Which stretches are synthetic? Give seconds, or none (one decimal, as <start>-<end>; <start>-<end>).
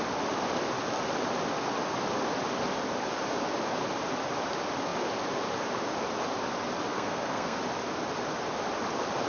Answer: 6.9-7.6